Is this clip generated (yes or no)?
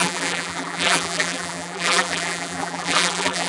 yes